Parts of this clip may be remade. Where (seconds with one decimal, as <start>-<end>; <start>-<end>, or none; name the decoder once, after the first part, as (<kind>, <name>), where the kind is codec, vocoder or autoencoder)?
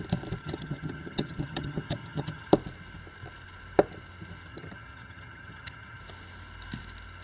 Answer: 0.4-2.5 (vocoder, HiFi-GAN); 4.5-6.0